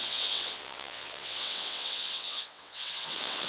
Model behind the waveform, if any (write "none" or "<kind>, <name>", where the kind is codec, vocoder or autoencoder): vocoder, WaveNeXt